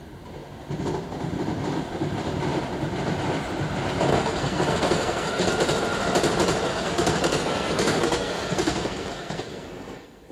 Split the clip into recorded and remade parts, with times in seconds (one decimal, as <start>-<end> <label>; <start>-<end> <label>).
0.0-4.1 recorded; 4.1-5.5 remade; 5.5-6.7 recorded; 6.7-10.3 remade